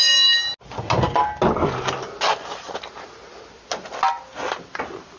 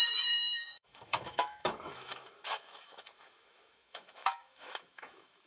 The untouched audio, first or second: first